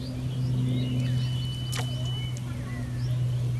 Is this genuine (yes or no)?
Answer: yes